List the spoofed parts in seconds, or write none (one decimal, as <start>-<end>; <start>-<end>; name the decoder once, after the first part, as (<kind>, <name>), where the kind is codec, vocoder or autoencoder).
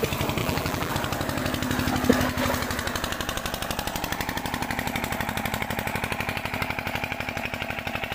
0.4-0.9 (vocoder, BigVGAN v2)